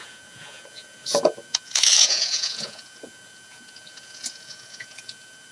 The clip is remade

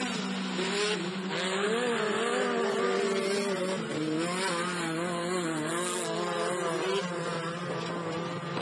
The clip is recorded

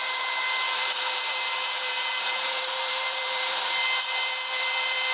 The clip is remade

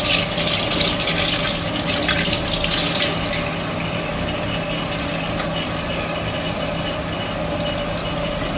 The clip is recorded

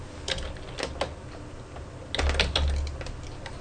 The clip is recorded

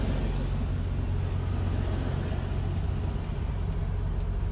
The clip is recorded